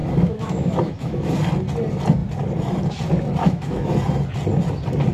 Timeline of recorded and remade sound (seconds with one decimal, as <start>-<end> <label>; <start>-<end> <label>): 0.0-1.3 remade; 1.3-3.4 recorded; 3.4-3.9 remade; 3.9-5.1 recorded